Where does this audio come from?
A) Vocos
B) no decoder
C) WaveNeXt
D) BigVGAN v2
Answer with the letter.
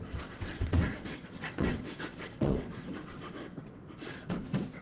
C